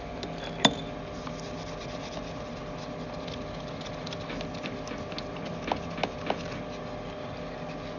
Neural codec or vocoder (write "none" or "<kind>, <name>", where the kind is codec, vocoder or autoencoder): none